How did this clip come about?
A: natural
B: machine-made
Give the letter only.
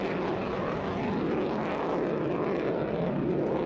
A